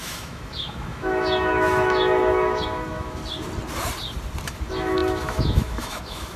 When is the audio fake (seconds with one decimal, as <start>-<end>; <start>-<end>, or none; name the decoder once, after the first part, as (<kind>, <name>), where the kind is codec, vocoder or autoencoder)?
0.0-3.2 (autoencoder, DAC-VAE); 4.5-6.4

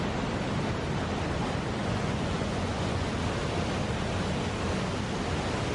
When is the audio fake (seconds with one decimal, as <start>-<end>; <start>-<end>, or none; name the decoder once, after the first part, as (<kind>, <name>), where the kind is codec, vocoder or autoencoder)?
1.8-3.1 (vocoder, Vocos)

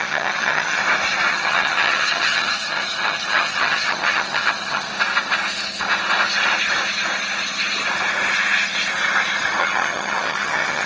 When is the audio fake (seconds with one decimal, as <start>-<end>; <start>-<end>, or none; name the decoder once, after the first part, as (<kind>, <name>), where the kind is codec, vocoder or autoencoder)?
0.0-0.8 (vocoder, HiFi-GAN); 1.3-4.9; 9.6-10.9

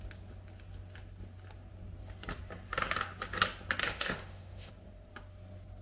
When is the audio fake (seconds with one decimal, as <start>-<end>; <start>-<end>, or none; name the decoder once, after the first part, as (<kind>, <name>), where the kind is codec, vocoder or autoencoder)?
3.8-4.7 (autoencoder, DAC-VAE)